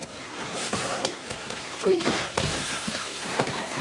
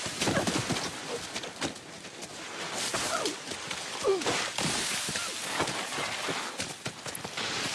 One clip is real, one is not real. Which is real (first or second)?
second